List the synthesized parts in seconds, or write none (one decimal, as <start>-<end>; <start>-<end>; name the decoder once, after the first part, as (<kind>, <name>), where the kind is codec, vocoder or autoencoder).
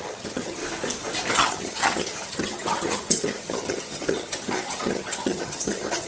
0.0-0.6 (vocoder, HiFi-GAN); 1.3-6.1